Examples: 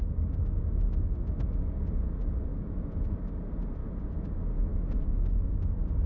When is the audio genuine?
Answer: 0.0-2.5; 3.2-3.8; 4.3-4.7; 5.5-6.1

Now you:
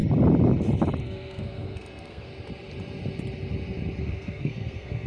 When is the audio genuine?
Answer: 0.0-1.0; 2.3-4.0

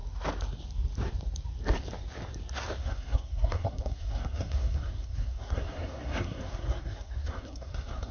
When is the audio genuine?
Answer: 0.0-2.8

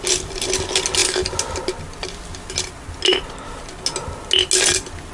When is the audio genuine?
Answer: 0.0-5.1

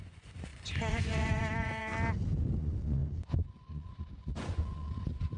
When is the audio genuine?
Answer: 1.9-2.6

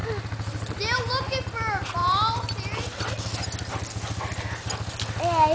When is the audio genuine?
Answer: 0.0-5.5